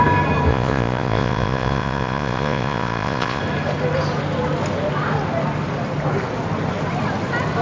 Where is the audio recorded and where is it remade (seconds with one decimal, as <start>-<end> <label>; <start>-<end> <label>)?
0.0-0.5 recorded; 0.5-3.4 remade; 3.4-7.6 recorded